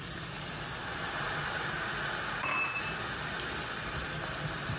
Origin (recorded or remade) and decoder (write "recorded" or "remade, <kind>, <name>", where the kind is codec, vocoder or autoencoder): recorded